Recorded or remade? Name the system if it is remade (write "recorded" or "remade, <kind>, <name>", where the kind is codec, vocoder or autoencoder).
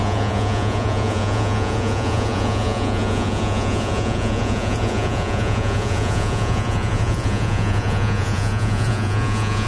remade, vocoder, Vocos